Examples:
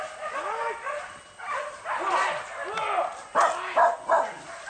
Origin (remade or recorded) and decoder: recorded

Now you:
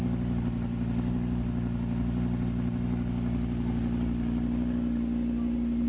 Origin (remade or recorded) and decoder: recorded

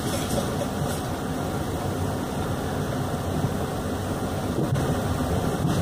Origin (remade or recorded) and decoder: recorded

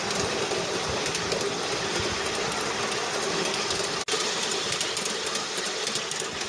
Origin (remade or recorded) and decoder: recorded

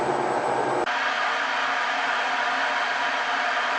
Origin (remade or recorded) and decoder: recorded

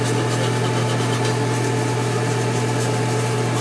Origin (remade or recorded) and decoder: recorded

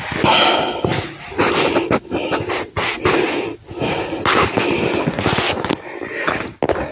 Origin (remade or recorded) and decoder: recorded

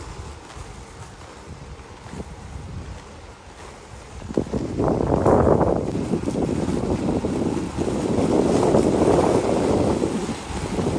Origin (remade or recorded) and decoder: recorded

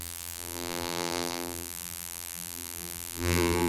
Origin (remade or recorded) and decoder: remade, vocoder, BigVGAN v2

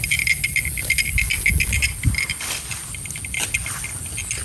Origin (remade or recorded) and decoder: recorded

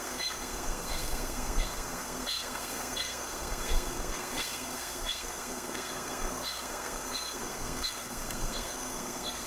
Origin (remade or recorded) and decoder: remade, codec, SNAC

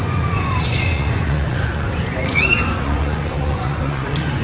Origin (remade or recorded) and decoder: remade, vocoder, Vocos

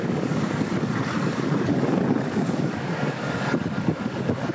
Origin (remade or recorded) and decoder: remade, codec, DAC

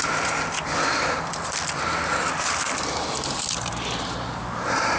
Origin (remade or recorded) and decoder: recorded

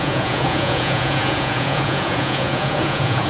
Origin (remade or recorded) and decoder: remade, vocoder, Vocos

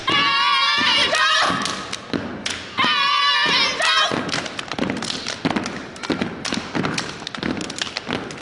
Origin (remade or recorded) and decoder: recorded